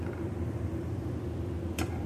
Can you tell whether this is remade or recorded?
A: remade